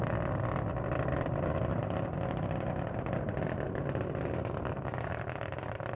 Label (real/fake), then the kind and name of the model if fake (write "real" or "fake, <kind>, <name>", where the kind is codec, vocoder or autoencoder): fake, vocoder, BigVGAN v2